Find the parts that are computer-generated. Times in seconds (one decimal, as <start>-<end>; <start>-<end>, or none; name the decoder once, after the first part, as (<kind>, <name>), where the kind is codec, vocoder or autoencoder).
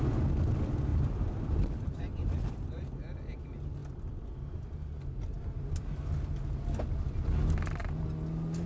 0.9-3.0 (vocoder, BigVGAN v2)